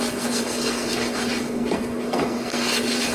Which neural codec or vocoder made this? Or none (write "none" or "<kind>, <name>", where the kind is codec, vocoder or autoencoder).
codec, SNAC